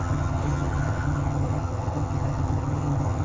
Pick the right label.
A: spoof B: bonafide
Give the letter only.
A